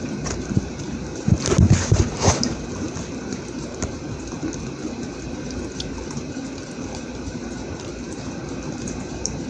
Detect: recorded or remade remade